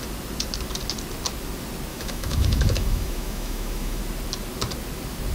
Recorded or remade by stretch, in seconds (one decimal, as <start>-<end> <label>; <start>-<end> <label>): 0.0-1.9 recorded; 1.9-4.0 remade; 4.0-5.3 recorded